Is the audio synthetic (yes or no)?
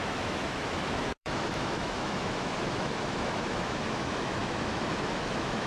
yes